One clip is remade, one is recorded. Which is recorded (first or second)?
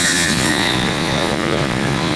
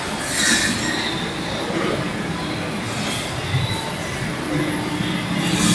second